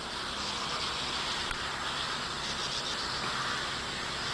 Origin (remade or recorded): recorded